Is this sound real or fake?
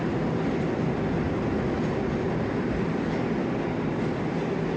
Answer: real